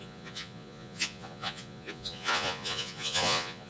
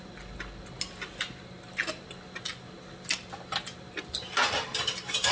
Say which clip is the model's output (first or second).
first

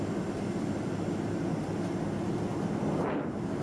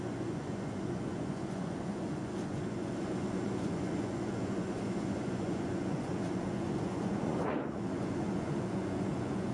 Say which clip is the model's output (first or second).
second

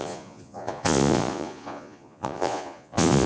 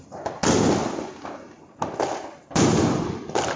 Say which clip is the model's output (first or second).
first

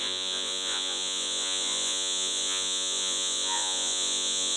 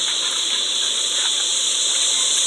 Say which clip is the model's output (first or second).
first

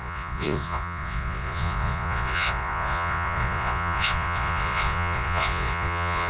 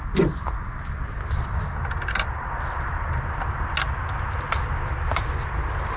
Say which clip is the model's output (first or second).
first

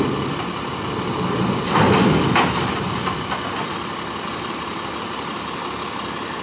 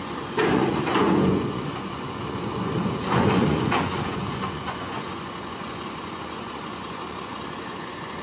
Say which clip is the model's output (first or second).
second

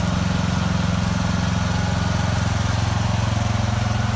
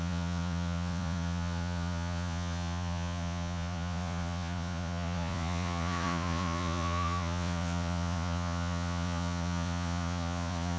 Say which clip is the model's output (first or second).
second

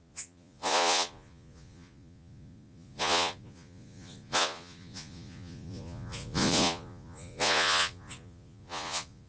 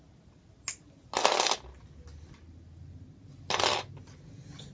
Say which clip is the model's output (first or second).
first